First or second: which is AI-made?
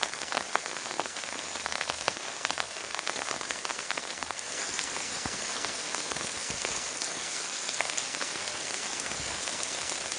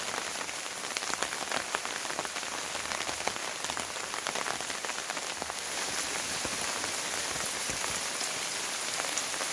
first